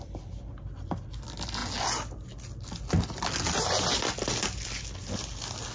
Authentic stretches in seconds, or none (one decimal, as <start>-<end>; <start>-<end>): 0.0-5.7